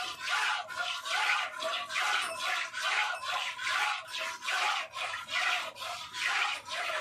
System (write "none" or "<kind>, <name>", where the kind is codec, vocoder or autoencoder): vocoder, BigVGAN v2